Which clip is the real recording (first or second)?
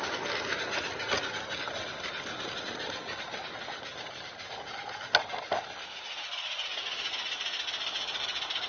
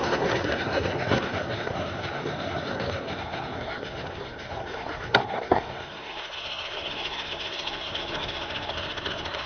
first